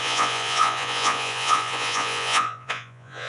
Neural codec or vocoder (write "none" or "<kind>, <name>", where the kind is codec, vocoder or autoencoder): vocoder, Vocos